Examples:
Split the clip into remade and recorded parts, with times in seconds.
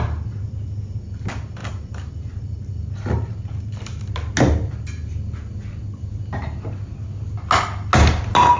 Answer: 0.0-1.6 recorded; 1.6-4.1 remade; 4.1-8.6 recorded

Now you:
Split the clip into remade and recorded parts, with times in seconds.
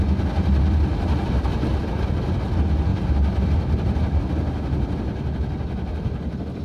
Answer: 0.0-0.9 recorded; 0.9-1.7 remade; 1.7-2.9 recorded; 2.9-4.2 remade; 4.2-6.6 recorded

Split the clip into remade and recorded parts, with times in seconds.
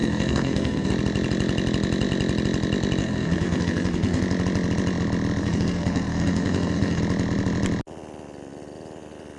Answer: 0.0-0.9 remade; 0.9-3.0 recorded; 3.0-4.2 remade; 4.2-5.4 recorded; 5.4-7.0 remade; 7.0-9.4 recorded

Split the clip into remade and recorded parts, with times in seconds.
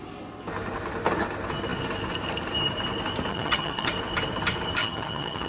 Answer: 0.0-3.3 recorded; 3.3-3.9 remade; 3.9-4.8 recorded; 4.8-5.5 remade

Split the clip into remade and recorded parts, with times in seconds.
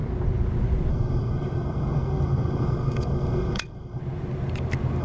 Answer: 0.0-0.9 recorded; 0.9-4.0 remade; 4.0-5.0 recorded